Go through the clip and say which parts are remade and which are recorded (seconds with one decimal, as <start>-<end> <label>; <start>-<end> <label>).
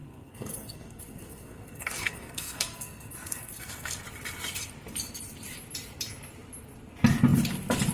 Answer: 0.0-4.0 remade; 4.0-7.9 recorded